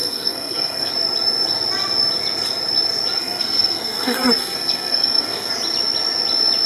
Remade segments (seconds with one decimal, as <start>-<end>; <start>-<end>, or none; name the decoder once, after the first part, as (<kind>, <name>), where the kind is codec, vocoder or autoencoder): 0.0-0.9 (codec, SNAC); 3.2-5.5